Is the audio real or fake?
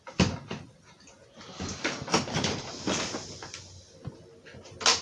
real